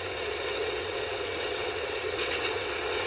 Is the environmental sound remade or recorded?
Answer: remade